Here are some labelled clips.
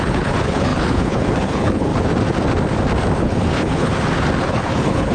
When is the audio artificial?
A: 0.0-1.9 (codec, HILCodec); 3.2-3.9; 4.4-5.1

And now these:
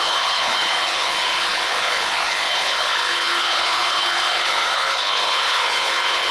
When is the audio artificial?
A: 0.0-6.3 (codec, HILCodec)

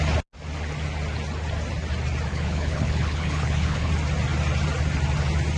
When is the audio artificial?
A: 2.3-3.9 (codec, HILCodec)

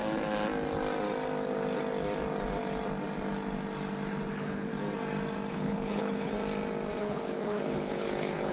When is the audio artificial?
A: 4.3-4.7 (codec, HILCodec); 5.5-6.3; 7.0-8.5

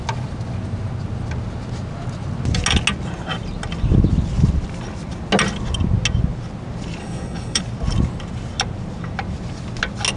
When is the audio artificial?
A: 7.0-7.6 (codec, HILCodec)

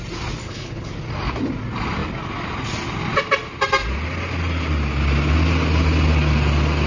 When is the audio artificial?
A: 0.4-0.9 (codec, HILCodec)